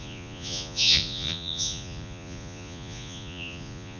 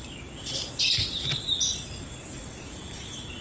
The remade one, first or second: first